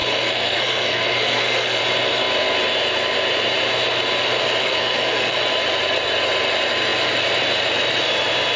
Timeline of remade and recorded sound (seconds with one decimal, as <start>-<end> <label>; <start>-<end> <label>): 0.0-1.8 remade; 1.8-4.6 recorded; 4.6-5.4 remade; 5.4-8.6 recorded